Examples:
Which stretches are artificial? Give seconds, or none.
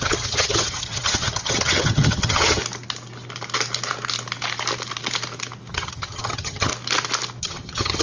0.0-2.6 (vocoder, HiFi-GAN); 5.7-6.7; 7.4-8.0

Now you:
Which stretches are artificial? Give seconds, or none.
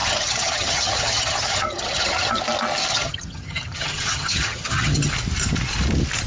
0.0-2.4 (vocoder, HiFi-GAN); 2.9-5.1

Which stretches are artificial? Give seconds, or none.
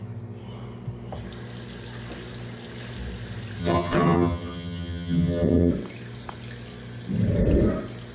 3.6-5.7 (vocoder, HiFi-GAN)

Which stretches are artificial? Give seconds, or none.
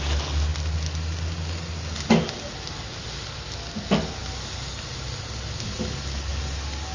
none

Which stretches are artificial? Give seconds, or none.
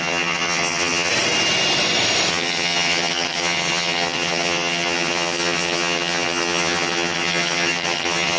0.0-1.1 (vocoder, HiFi-GAN); 2.3-8.4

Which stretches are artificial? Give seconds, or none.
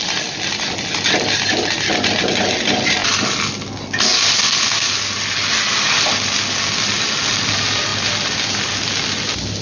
none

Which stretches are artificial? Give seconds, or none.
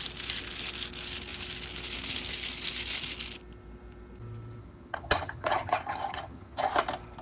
4.6-6.7 (vocoder, HiFi-GAN)